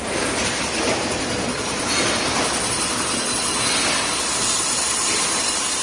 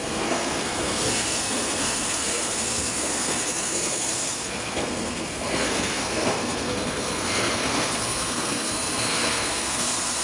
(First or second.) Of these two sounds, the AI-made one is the second